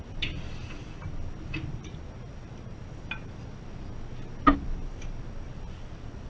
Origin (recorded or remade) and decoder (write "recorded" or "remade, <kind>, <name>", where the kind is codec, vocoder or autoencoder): recorded